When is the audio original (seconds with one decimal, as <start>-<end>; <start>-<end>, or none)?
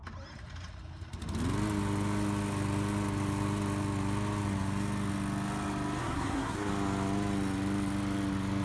0.0-6.0; 6.7-8.6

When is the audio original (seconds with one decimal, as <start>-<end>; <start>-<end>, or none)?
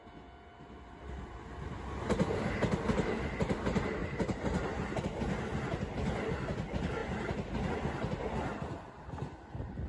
0.0-4.0; 5.0-7.0; 7.7-9.9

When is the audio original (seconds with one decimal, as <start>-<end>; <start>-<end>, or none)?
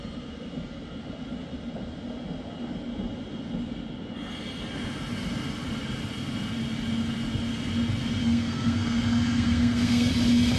0.0-8.2; 10.1-10.6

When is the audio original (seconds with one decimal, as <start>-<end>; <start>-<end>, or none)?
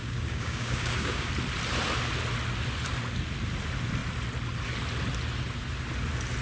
1.3-6.4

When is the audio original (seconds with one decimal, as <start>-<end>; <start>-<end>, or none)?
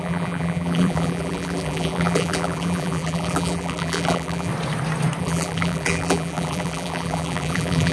4.5-5.2